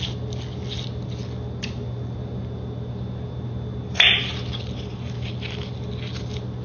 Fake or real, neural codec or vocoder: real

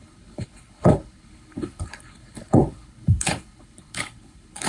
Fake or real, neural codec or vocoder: fake, codec, HILCodec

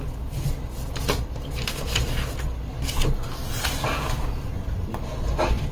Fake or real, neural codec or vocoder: real